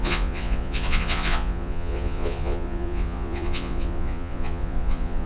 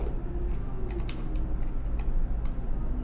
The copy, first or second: first